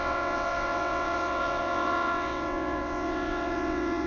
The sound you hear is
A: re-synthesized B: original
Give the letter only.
A